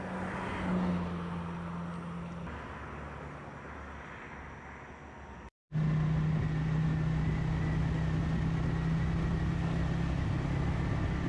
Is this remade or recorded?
recorded